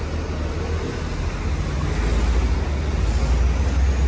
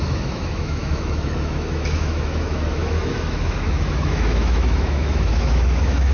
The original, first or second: first